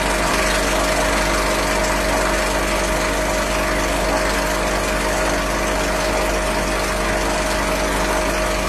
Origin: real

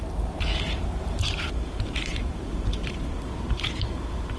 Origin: fake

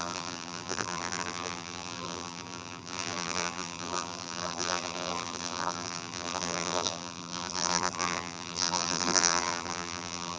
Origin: fake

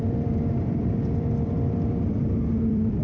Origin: fake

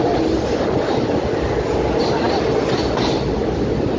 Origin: real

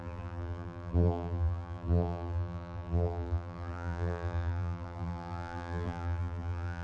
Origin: fake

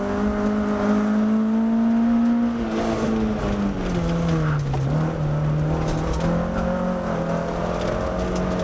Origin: real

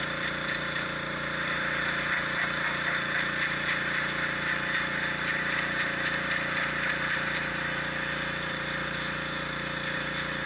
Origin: fake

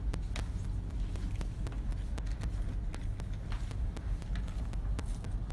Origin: real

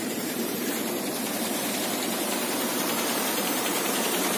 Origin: fake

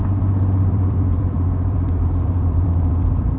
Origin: fake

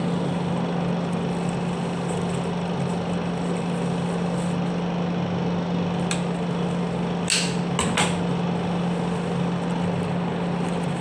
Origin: real